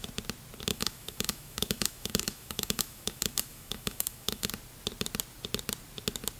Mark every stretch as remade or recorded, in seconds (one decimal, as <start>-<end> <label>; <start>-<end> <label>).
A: 0.0-0.7 recorded; 0.7-4.5 remade; 4.5-6.4 recorded